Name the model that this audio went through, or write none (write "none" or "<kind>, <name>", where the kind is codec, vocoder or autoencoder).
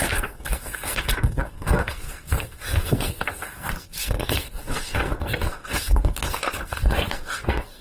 codec, SNAC